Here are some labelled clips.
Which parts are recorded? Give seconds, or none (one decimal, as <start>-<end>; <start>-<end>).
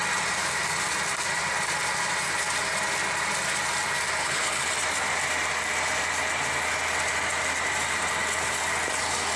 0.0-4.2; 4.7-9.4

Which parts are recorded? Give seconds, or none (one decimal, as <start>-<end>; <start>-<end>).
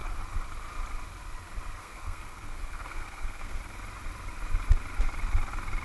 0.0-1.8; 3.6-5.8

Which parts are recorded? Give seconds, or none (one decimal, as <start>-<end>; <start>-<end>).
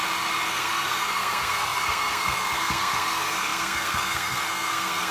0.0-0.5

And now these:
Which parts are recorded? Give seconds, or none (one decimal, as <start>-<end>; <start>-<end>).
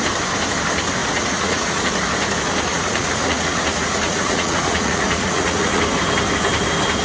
0.0-1.0; 1.8-2.7; 5.8-7.0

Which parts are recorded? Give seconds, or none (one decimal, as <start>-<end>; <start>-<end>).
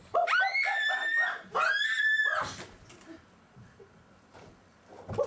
0.0-5.3